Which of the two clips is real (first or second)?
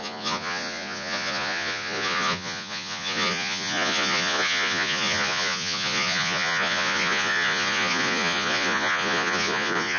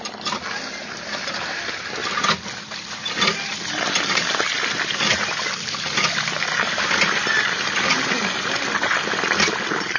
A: second